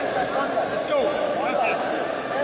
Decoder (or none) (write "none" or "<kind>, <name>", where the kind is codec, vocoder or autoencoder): none